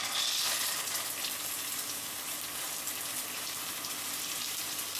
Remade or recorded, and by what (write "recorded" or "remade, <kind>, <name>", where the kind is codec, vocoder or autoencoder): recorded